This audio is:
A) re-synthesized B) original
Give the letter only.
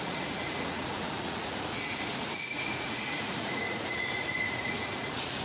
A